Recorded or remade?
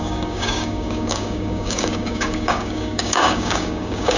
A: remade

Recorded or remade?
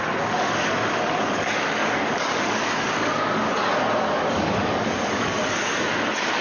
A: remade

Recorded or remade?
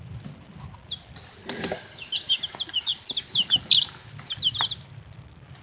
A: recorded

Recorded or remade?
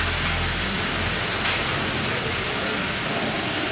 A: recorded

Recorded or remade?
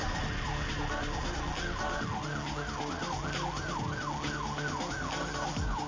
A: recorded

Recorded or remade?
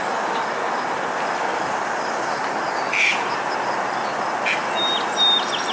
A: recorded